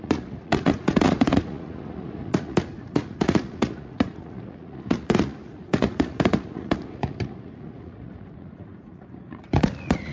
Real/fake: fake